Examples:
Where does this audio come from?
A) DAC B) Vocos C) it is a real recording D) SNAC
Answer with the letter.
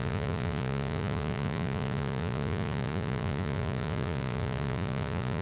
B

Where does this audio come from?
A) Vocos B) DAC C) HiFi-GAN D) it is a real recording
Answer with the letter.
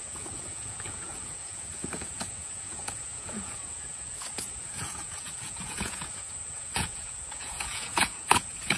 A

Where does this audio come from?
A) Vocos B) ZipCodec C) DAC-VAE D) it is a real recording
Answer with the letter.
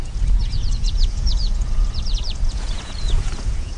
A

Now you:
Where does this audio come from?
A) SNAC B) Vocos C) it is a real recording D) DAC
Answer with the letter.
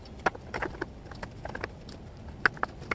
C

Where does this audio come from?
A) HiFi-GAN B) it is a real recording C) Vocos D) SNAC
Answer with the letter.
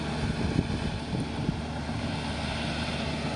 B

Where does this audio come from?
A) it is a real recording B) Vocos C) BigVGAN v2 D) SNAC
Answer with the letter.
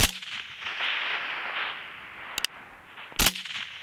A